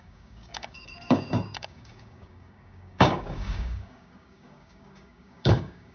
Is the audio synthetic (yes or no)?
yes